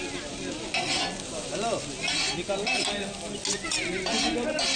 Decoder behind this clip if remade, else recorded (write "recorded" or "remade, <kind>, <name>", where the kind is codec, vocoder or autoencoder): recorded